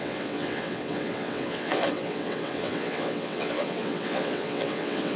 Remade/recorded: remade